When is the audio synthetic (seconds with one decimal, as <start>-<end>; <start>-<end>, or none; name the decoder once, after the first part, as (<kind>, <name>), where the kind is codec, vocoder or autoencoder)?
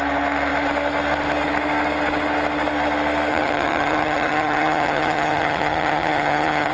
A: 3.3-6.7 (vocoder, HiFi-GAN)